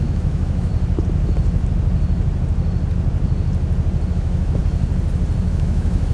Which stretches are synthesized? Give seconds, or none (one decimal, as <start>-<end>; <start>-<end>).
0.0-0.7; 4.1-4.6; 5.5-6.1

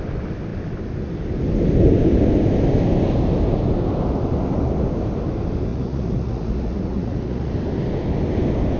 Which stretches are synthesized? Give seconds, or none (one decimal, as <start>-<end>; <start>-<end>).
5.7-7.5

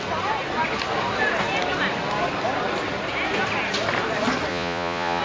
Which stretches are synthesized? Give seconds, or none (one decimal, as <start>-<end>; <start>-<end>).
4.5-5.2

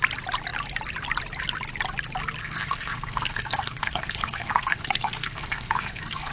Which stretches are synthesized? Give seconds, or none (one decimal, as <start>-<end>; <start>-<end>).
2.4-6.3

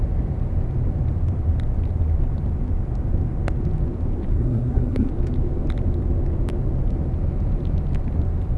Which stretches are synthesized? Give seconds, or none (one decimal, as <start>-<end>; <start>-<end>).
4.3-5.1

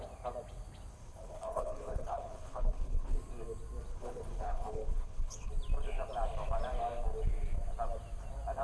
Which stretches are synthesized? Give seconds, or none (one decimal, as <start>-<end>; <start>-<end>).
0.9-3.1; 3.9-5.5

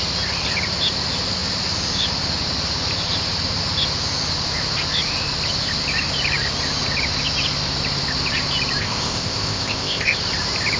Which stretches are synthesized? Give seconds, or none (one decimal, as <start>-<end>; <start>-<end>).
8.8-10.2

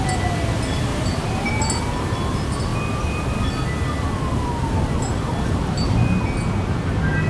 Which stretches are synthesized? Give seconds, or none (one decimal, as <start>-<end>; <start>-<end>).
0.9-1.5; 2.7-3.5